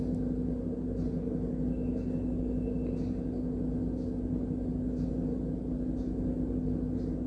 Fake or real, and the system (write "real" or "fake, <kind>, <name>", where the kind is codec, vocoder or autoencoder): real